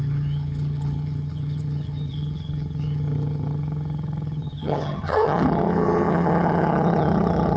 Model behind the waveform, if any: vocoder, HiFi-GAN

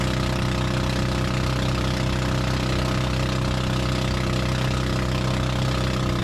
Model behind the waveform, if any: none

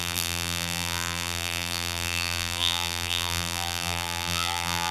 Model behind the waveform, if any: vocoder, BigVGAN v2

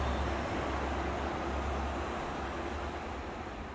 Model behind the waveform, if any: none